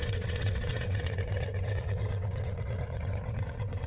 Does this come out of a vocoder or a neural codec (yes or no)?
yes